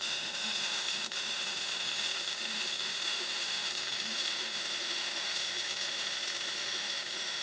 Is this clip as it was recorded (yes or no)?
no